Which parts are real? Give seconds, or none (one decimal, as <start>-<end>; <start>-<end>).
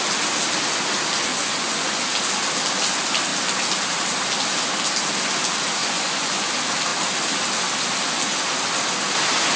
0.0-1.3; 2.0-5.8; 6.5-9.6